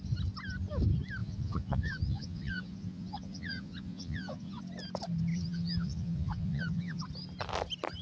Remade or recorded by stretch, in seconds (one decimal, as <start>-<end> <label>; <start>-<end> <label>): 0.0-1.2 recorded; 1.2-4.6 remade; 4.6-5.3 recorded; 5.3-7.0 remade; 7.0-8.0 recorded